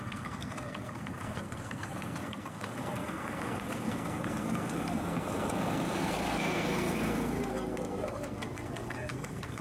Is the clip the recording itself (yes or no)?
no